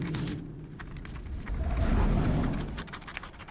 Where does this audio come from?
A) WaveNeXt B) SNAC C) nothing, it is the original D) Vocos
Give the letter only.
C